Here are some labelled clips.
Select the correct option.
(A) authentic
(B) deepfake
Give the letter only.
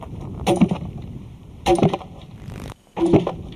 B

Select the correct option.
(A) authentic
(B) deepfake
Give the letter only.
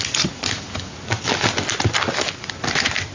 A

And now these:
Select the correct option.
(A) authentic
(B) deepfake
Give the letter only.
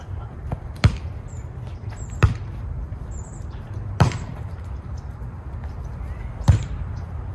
B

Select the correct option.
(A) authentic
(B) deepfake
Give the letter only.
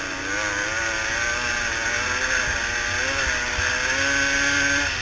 A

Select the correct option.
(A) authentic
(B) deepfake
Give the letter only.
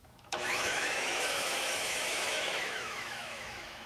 B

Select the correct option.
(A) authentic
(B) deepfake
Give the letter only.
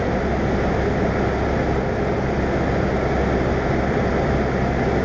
A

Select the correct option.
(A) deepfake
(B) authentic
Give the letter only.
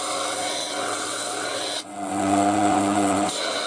A